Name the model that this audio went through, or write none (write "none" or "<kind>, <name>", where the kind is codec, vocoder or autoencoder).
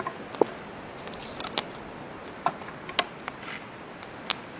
none